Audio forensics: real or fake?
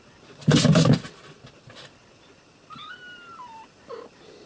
real